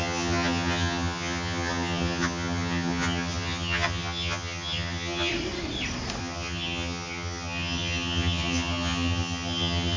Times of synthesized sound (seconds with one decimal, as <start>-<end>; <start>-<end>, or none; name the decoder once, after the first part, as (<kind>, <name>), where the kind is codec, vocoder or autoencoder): 0.0-5.3 (vocoder, HiFi-GAN); 6.2-10.0